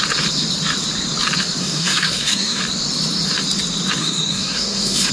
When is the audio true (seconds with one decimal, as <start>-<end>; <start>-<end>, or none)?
0.0-1.6; 2.6-4.0